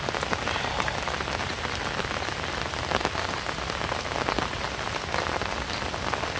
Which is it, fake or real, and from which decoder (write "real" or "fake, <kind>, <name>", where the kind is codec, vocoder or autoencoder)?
real